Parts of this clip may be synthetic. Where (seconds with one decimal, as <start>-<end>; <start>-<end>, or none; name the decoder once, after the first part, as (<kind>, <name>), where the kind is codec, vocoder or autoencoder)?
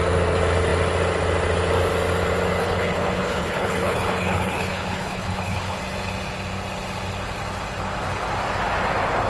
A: 2.6-5.8 (codec, HILCodec)